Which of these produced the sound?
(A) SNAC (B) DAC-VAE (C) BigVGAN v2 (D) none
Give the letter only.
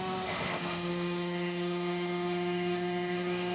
B